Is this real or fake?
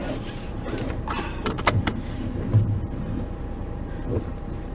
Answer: fake